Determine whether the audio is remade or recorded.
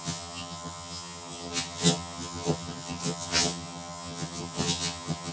remade